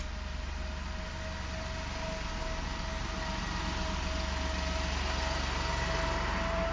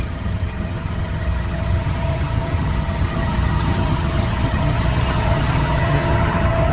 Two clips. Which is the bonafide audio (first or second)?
first